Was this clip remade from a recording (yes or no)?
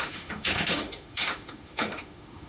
yes